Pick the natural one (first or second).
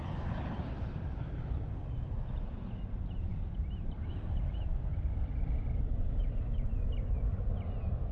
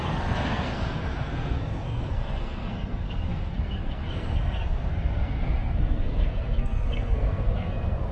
first